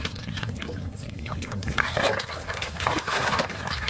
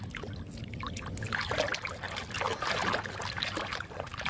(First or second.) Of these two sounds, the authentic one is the second